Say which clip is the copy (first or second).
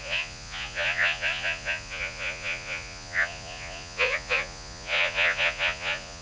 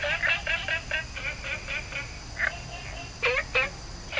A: first